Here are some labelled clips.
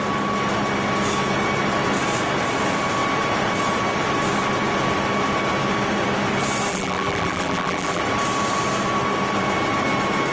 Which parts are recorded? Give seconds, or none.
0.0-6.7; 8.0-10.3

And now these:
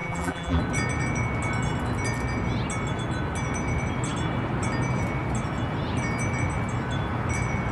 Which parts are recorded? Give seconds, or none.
0.6-7.7

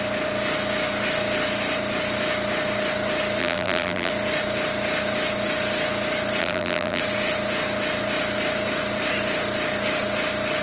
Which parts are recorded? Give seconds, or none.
0.0-3.4; 4.1-6.4; 7.0-10.6

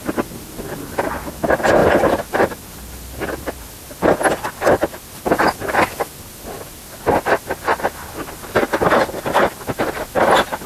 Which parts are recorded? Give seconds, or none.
0.0-10.7

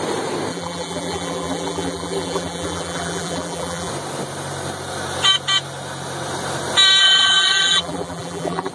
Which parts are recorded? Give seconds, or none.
0.0-0.5; 3.9-7.0